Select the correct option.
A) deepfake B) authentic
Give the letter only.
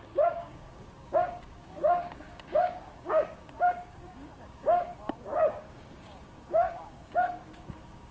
A